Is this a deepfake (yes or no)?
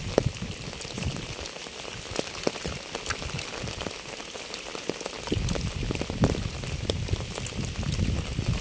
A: no